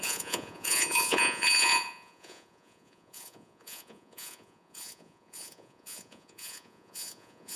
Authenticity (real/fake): fake